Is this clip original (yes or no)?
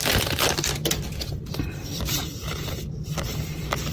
no